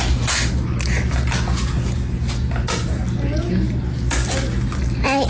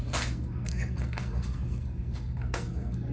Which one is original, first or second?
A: first